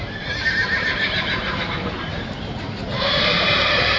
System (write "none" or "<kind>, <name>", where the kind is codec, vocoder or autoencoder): vocoder, BigVGAN v2